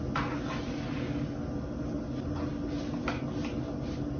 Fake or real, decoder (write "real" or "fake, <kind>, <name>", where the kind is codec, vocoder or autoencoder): real